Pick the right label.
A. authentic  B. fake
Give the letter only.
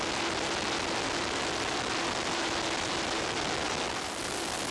A